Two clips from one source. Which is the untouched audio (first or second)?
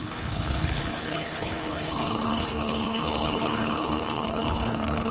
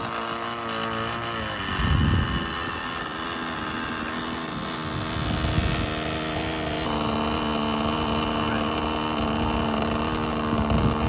second